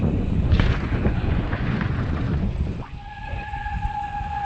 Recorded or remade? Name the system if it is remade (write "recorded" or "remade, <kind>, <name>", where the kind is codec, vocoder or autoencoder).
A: remade, vocoder, Vocos